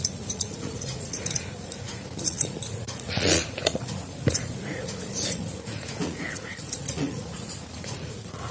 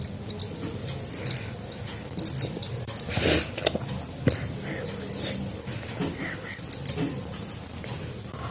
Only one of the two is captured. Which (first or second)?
second